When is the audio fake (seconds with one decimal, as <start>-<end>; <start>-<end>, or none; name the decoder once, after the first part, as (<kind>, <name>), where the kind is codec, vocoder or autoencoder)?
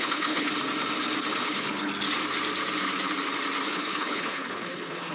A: 0.0-0.5 (codec, HILCodec); 1.4-1.9; 3.7-5.1